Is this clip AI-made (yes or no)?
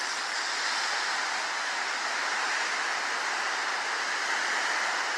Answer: no